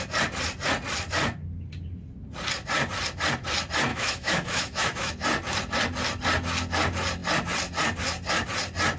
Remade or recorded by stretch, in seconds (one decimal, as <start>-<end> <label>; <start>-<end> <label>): 0.0-3.9 recorded; 3.9-5.1 remade; 5.1-9.0 recorded